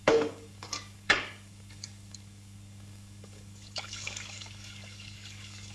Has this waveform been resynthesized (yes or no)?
yes